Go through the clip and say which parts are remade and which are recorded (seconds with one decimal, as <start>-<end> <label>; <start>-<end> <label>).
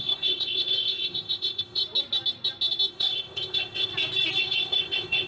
0.0-1.8 remade; 1.8-2.9 recorded; 2.9-3.9 remade; 3.9-4.4 recorded; 4.4-5.3 remade